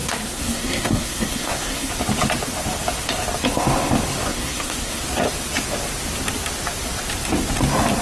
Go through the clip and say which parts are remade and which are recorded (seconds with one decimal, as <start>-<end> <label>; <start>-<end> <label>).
0.0-1.9 remade; 1.9-4.3 recorded; 4.3-5.0 remade; 5.0-8.0 recorded